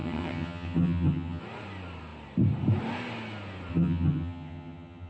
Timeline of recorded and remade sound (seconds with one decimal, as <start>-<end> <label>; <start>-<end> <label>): 0.0-1.4 remade; 1.4-3.7 recorded; 3.7-5.1 remade